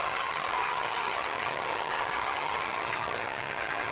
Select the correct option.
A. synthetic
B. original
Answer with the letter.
A